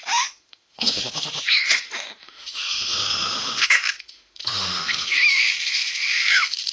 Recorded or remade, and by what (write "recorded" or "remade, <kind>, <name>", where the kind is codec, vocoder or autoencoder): remade, autoencoder, DAC-VAE